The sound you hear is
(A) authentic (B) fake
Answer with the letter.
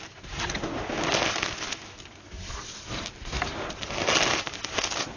A